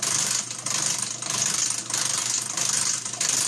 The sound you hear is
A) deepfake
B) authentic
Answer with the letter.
A